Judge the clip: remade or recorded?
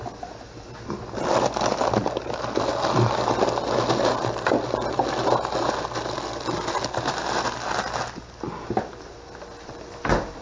recorded